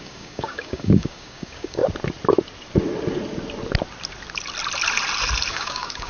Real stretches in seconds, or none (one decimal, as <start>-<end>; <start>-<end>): 1.8-5.5